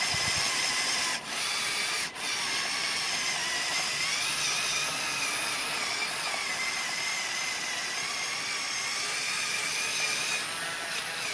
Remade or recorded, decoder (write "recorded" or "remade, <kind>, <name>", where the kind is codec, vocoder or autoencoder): remade, vocoder, BigVGAN v2